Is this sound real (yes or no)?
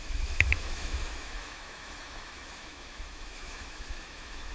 no